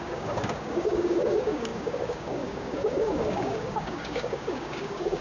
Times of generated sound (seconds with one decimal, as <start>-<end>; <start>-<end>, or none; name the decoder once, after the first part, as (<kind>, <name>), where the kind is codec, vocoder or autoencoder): 0.0-5.2 (codec, DAC)